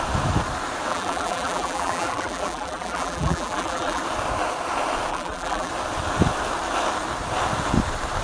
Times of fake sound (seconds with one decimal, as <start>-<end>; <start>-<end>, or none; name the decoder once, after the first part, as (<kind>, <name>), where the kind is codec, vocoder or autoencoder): 0.9-4.0 (vocoder, BigVGAN v2); 5.1-5.7